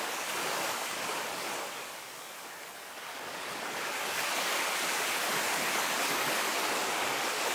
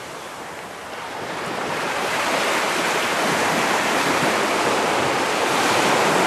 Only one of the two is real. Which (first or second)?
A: second